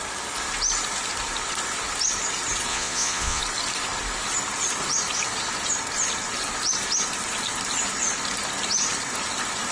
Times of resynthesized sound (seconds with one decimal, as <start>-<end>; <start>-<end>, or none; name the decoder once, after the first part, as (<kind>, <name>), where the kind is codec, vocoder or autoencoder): 2.7-3.4 (vocoder, Vocos)